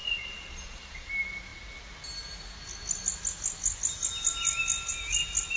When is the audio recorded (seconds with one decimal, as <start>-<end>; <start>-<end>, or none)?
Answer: 1.1-5.6